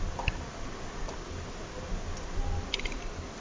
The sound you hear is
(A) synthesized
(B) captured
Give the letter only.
B